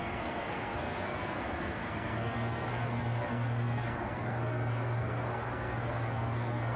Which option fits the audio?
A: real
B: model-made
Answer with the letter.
B